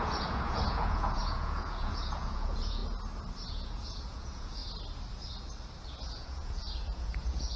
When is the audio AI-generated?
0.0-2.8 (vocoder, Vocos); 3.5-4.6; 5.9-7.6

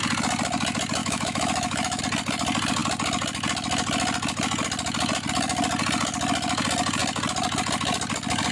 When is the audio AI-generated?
1.0-2.0 (autoencoder, DAC-VAE)

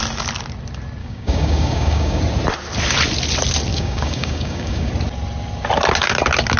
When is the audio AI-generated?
1.0-2.2 (codec, DAC); 3.7-4.9

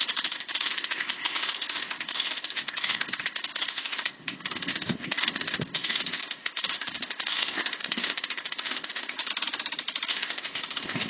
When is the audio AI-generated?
0.0-9.3 (codec, ZipCodec); 10.1-11.1